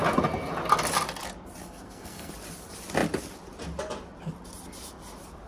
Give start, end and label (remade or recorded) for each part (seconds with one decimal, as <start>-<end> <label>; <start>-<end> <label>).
0.0-1.6 recorded; 1.6-2.3 remade; 2.3-5.5 recorded